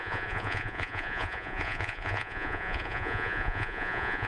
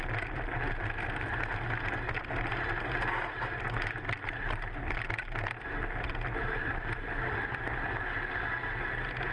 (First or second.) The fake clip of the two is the first